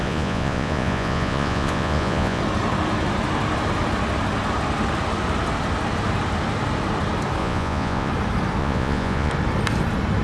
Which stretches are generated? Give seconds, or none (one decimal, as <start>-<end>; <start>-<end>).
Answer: 0.0-2.4; 7.4-8.1; 8.6-9.3